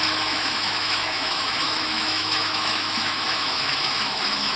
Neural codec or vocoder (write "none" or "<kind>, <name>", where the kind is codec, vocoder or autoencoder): autoencoder, DAC-VAE